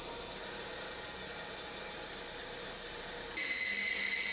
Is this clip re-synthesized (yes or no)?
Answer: no